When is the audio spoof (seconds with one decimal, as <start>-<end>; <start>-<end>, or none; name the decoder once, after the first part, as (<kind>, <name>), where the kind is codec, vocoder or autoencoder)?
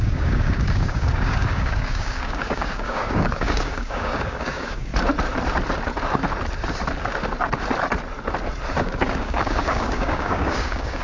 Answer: 0.0-4.9 (codec, DAC); 8.8-11.0